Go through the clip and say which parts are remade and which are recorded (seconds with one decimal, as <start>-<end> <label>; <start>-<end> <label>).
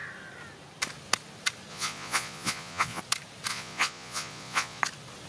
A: 0.0-1.7 recorded; 1.7-3.0 remade; 3.0-3.5 recorded; 3.5-4.8 remade; 4.8-5.3 recorded